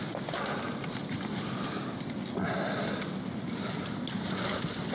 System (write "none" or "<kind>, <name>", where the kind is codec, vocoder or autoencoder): none